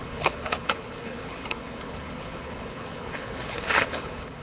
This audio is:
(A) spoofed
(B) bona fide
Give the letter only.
A